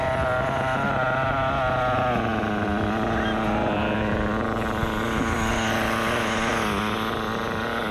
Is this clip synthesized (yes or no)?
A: no